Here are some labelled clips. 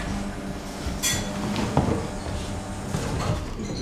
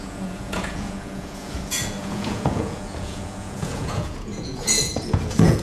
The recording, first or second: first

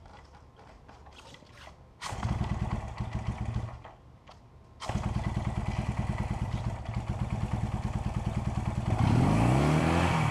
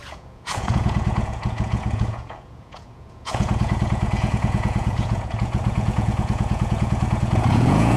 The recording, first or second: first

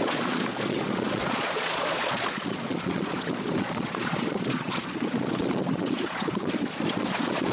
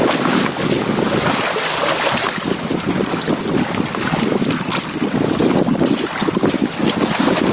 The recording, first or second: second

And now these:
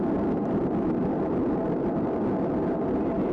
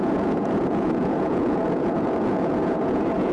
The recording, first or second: first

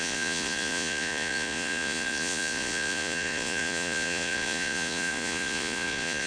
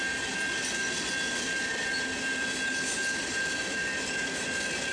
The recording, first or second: second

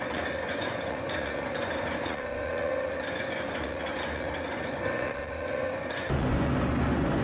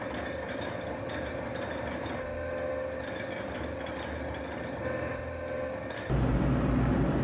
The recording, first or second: second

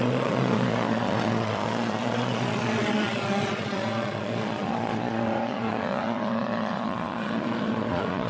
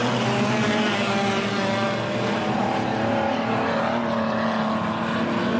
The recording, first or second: second